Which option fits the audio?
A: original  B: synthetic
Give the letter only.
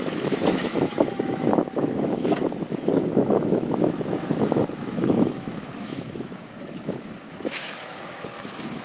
B